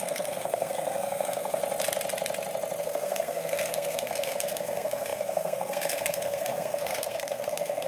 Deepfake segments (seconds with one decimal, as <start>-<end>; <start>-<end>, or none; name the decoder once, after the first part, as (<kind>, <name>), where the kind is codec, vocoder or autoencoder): 0.0-1.6 (codec, SNAC); 2.8-7.9